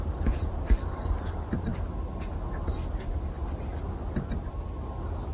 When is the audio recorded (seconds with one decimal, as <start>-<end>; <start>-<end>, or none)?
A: 1.7-5.3